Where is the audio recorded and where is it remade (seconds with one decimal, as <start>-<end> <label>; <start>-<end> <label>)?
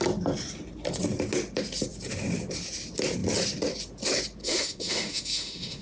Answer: 0.0-4.4 recorded; 4.4-5.8 remade